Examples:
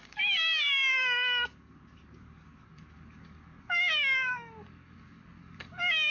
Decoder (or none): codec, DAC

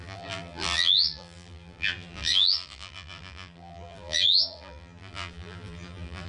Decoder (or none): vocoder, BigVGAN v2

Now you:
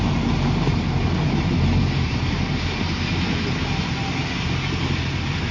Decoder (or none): none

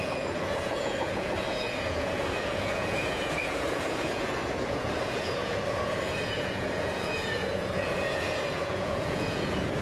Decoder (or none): vocoder, Vocos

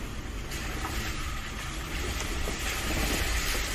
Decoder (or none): none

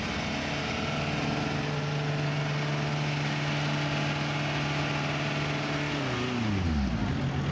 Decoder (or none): none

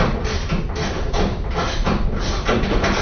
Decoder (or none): none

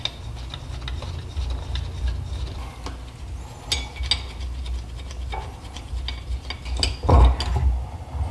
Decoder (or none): none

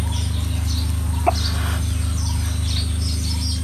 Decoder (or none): none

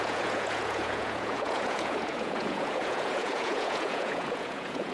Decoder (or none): vocoder, Vocos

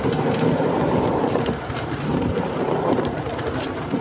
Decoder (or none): vocoder, BigVGAN v2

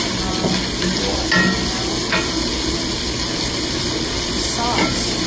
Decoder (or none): none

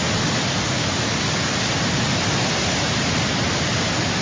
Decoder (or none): none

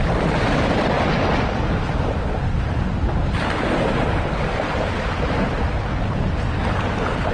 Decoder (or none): none